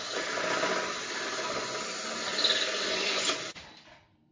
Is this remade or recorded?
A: recorded